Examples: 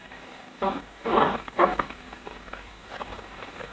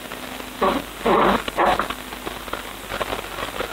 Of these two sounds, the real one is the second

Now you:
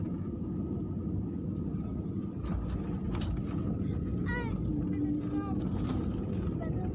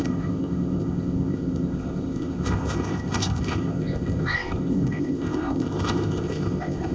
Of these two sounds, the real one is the first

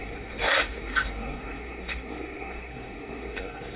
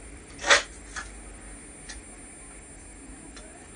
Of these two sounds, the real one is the second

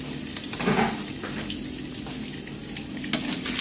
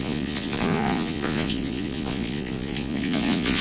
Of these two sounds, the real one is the first